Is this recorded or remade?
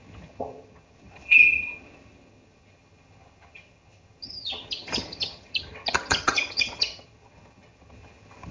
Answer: remade